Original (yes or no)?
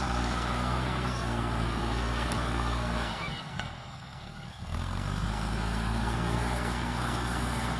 no